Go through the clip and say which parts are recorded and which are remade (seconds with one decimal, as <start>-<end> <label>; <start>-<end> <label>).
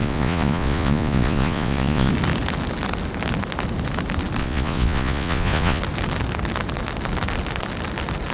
0.0-2.1 remade; 2.1-4.4 recorded; 4.4-5.8 remade; 5.8-8.3 recorded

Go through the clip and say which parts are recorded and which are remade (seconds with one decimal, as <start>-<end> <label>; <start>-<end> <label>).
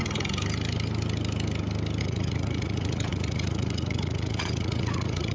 0.0-2.0 recorded; 2.0-5.3 remade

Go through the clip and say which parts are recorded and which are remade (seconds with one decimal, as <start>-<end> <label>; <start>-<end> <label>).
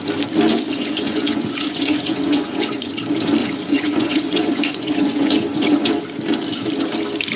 0.0-0.5 recorded; 0.5-2.9 remade; 2.9-3.4 recorded; 3.4-5.9 remade; 5.9-7.4 recorded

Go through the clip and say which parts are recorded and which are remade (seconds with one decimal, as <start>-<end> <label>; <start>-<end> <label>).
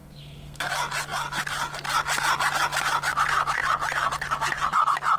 0.0-0.7 remade; 0.7-5.2 recorded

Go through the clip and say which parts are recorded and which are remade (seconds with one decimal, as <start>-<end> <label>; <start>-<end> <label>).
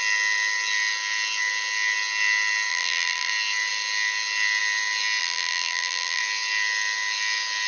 0.0-2.7 recorded; 2.7-3.3 remade; 3.3-5.2 recorded; 5.2-6.2 remade; 6.2-7.7 recorded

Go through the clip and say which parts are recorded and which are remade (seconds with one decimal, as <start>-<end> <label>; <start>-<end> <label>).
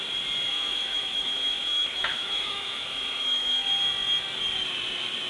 0.0-0.5 recorded; 0.5-3.7 remade; 3.7-5.3 recorded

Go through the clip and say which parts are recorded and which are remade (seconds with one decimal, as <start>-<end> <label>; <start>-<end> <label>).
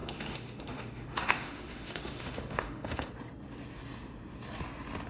0.0-3.1 remade; 3.1-5.1 recorded